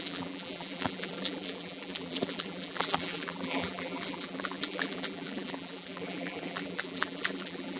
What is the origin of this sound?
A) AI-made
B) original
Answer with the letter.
A